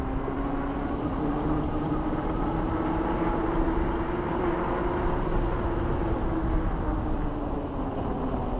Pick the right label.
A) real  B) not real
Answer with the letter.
A